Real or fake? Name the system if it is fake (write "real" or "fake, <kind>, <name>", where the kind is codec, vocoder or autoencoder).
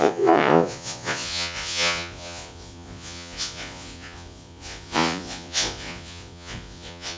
fake, vocoder, Vocos